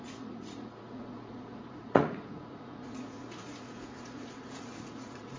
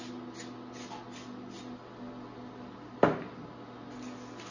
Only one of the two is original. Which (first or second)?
second